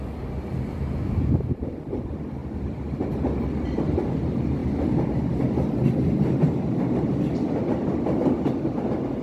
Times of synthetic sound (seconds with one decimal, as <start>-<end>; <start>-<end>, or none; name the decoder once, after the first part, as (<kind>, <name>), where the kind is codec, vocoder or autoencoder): none